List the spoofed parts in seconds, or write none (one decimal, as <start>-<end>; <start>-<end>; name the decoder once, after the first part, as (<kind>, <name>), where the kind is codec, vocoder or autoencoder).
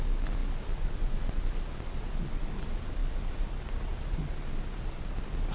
none